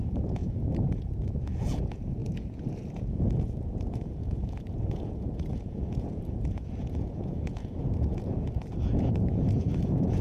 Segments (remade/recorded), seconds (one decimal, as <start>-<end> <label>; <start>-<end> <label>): 0.0-10.2 remade